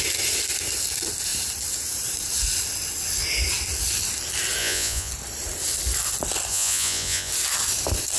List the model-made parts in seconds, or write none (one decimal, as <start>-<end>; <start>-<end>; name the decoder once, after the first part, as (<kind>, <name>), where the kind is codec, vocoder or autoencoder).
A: 4.6-5.1 (vocoder, Vocos); 6.5-7.3